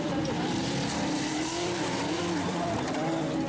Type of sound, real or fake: fake